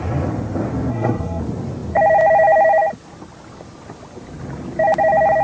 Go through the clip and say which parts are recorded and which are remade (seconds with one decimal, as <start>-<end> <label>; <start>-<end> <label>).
0.0-0.9 recorded; 0.9-1.4 remade; 1.4-5.4 recorded